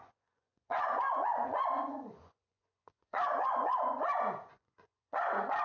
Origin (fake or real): fake